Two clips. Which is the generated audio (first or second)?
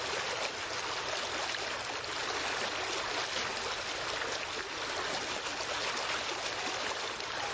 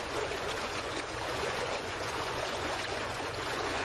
second